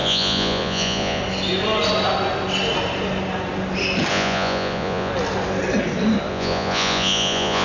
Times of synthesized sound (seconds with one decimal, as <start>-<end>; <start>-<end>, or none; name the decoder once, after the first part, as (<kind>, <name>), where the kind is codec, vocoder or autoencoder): 0.0-1.2 (vocoder, Vocos); 4.1-5.1; 6.3-7.6